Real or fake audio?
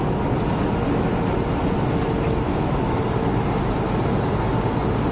real